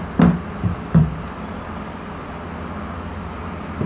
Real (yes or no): yes